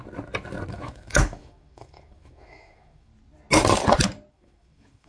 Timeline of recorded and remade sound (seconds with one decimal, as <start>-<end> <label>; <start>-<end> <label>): 0.0-0.7 recorded; 0.7-3.1 remade; 3.1-4.3 recorded; 4.3-5.1 remade